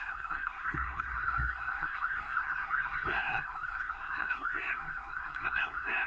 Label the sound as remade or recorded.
remade